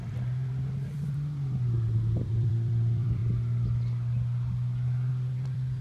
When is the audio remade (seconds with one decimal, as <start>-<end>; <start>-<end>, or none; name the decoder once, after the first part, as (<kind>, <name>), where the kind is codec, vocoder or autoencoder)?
0.0-3.2 (vocoder, BigVGAN v2); 5.1-5.8